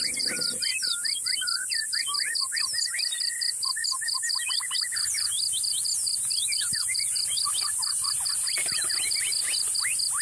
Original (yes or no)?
yes